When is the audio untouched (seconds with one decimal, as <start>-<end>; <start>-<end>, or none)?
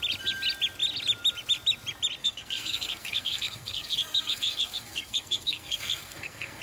0.0-2.2